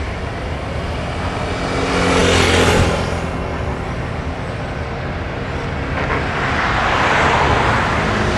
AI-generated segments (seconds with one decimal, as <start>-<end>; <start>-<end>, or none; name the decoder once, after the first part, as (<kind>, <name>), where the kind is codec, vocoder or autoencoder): none